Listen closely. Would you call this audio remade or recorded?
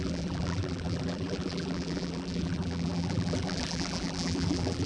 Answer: remade